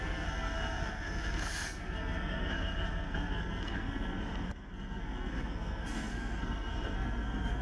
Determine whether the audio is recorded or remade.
remade